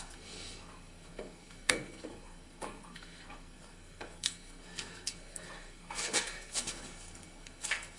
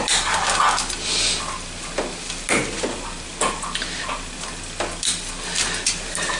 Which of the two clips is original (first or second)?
second